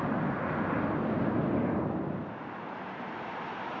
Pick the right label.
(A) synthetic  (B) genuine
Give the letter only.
B